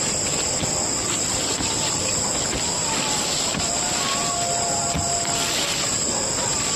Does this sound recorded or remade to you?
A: recorded